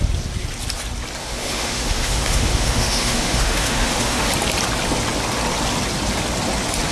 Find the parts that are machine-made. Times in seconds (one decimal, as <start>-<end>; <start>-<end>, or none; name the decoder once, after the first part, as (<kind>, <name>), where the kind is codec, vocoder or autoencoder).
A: 1.2-4.3 (autoencoder, DAC-VAE)